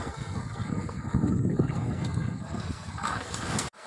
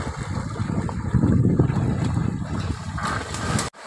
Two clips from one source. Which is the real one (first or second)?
second